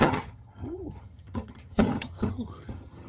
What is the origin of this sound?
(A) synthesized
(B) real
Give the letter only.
A